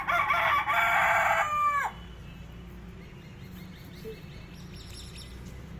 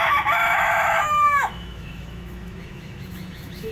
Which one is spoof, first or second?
second